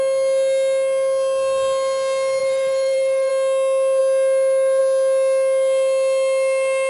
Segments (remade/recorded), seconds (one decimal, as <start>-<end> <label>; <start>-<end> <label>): 0.0-2.4 recorded; 2.4-3.3 remade; 3.3-6.9 recorded